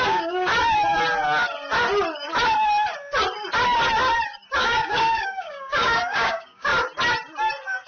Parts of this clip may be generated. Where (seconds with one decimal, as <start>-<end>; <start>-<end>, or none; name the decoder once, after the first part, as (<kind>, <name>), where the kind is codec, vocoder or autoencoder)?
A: 0.0-0.5 (codec, DAC); 4.6-6.7